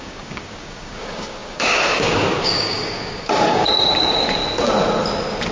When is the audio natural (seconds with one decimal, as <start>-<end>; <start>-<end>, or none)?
4.4-5.5